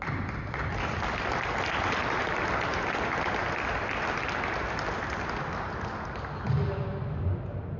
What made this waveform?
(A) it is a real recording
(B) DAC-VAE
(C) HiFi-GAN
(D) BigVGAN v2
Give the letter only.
A